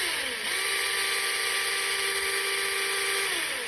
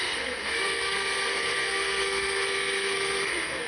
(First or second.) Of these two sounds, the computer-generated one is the second